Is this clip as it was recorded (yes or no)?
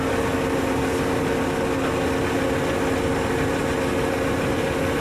yes